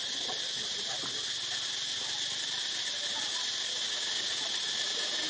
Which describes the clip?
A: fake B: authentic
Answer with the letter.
B